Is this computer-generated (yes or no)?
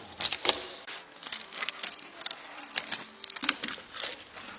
no